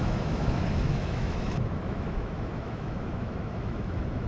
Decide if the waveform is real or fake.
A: fake